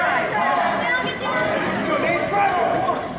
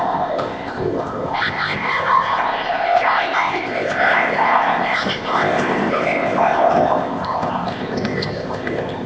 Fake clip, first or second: second